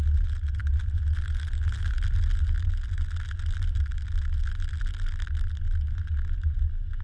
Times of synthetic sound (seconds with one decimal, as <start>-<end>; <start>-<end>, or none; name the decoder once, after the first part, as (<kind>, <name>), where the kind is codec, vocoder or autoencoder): none